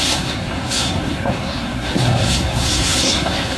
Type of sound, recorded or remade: remade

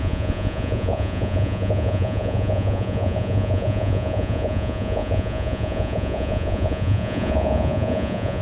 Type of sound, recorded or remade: remade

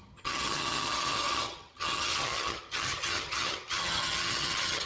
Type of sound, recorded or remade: remade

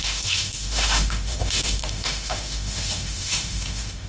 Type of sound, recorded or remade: remade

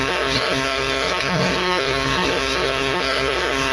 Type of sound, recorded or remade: remade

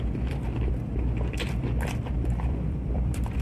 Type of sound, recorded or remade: remade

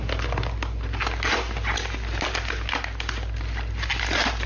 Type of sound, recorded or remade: recorded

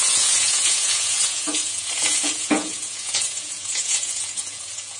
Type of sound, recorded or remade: remade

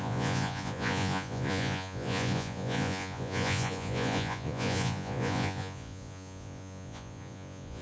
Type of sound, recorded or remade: remade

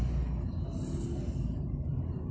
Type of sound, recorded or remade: recorded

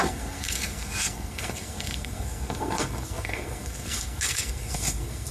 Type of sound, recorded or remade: remade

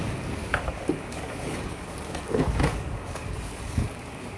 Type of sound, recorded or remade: remade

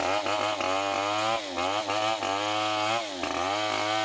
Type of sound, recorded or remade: recorded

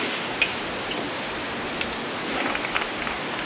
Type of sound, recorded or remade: recorded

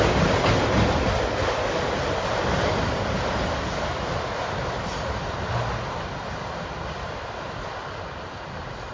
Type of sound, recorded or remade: recorded